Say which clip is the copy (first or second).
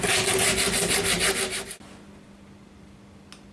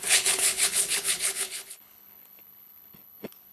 second